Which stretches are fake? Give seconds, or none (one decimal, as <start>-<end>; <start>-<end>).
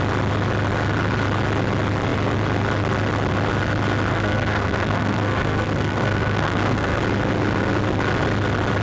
4.1-7.0